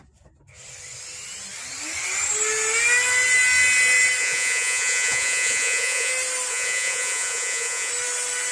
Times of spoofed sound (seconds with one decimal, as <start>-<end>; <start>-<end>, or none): 4.2-6.1; 6.5-7.9